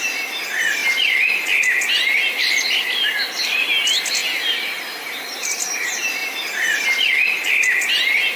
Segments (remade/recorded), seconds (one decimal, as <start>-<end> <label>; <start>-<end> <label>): 0.0-8.4 recorded